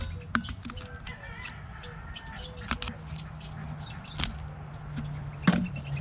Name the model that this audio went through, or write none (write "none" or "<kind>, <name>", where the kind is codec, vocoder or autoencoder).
none